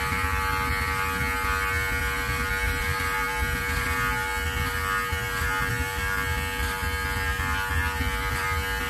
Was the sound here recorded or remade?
recorded